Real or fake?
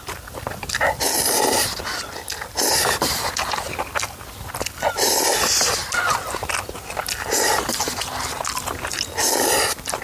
real